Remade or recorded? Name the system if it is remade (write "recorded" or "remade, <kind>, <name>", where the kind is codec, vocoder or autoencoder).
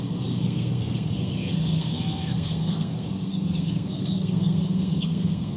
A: remade, codec, SNAC